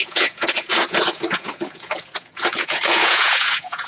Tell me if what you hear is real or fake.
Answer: fake